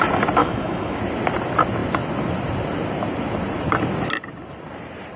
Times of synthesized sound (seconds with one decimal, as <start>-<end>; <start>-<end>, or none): 0.4-1.0